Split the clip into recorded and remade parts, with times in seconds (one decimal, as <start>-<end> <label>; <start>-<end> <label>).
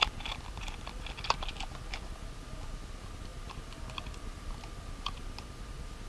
0.0-6.1 recorded